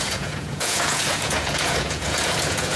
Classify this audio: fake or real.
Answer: fake